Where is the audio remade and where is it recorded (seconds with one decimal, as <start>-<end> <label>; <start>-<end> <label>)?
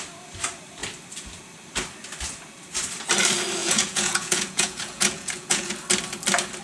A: 0.0-3.6 recorded; 3.6-5.7 remade; 5.7-6.6 recorded